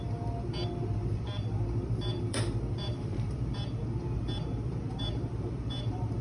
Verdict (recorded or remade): remade